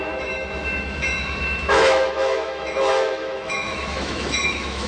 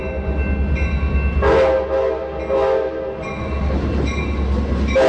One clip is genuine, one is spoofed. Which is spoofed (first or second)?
first